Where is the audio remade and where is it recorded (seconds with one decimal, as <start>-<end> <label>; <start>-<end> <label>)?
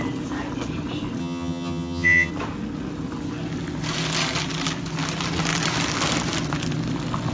0.0-1.2 recorded; 1.2-2.3 remade; 2.3-7.3 recorded